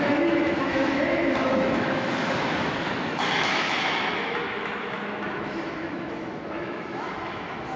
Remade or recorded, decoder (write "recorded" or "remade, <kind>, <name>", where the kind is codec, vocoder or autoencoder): remade, autoencoder, DAC-VAE